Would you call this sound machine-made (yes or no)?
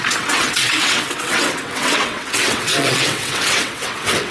yes